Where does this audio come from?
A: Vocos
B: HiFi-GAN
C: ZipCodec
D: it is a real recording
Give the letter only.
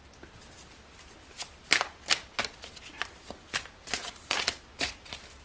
D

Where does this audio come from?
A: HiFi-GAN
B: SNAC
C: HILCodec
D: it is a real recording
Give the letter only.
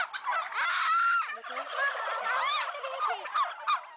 D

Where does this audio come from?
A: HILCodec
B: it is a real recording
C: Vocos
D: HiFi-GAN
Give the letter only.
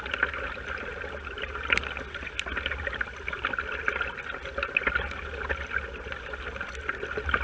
B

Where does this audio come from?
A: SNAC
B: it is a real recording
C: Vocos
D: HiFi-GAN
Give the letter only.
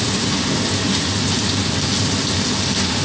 B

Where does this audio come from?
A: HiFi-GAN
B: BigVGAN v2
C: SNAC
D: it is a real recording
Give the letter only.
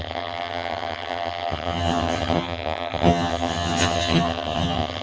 A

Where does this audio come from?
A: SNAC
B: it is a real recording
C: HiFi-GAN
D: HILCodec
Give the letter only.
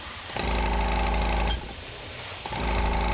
B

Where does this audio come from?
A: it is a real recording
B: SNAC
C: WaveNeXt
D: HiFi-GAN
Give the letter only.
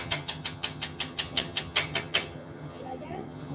D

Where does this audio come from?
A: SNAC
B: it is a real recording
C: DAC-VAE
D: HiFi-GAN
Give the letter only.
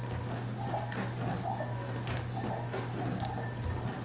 B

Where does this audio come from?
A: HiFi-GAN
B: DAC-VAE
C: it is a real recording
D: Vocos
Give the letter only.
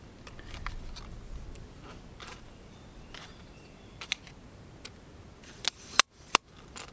C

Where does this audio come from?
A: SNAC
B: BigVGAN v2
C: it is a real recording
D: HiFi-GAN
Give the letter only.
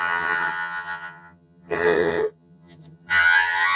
D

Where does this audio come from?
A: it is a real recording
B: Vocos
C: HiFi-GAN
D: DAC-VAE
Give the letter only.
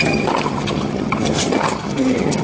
C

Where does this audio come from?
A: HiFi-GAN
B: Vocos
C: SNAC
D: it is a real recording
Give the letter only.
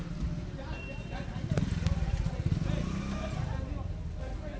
D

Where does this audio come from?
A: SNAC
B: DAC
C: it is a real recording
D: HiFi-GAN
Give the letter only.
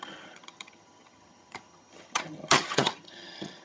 D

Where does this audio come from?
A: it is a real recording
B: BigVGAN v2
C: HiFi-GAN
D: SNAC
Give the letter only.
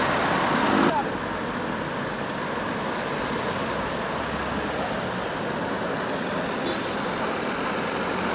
A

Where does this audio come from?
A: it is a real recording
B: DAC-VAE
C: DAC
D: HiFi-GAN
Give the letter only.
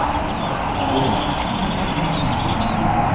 A